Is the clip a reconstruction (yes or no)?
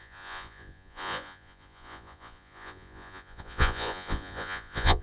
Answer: yes